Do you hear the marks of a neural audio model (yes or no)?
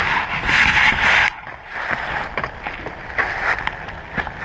no